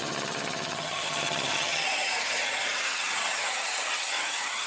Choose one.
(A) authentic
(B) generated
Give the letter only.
B